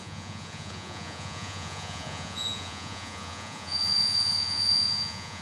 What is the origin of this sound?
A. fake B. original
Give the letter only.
A